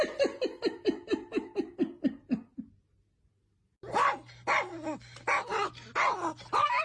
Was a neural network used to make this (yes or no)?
no